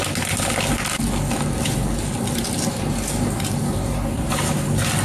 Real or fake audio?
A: real